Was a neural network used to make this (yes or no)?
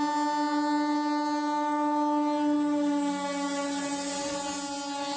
no